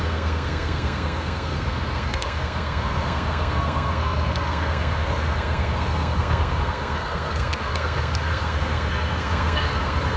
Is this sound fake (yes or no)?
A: yes